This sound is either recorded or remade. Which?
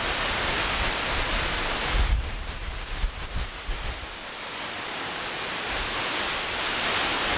recorded